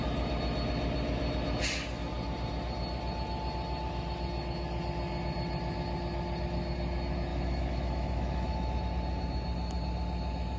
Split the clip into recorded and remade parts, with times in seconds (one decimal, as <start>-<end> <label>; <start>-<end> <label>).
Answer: 0.0-7.3 recorded; 7.3-8.8 remade; 8.8-10.6 recorded